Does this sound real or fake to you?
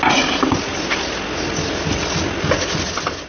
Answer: real